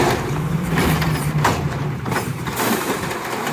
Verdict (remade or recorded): remade